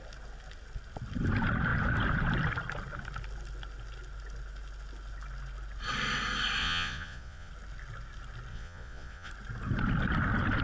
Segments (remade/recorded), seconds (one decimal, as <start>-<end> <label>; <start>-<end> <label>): 0.0-6.6 recorded; 6.6-7.5 remade; 7.5-8.5 recorded; 8.5-9.3 remade; 9.3-10.6 recorded